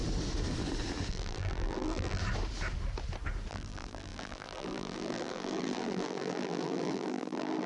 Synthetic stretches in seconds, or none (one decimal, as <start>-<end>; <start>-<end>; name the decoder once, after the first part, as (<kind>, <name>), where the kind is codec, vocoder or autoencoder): 1.1-2.2 (vocoder, BigVGAN v2); 3.5-7.7